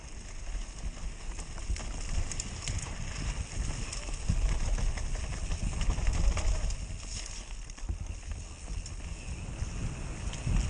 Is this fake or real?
real